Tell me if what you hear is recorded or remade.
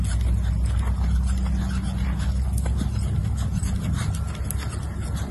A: recorded